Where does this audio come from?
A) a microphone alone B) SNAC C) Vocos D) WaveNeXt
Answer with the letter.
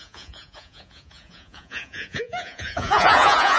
C